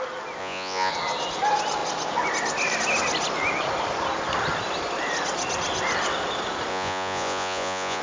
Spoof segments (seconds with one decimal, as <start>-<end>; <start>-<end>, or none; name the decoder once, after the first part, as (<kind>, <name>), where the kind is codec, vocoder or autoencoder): 0.4-0.9 (vocoder, Vocos); 6.7-8.0